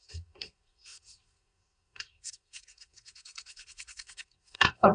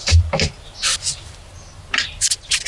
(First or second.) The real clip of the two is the second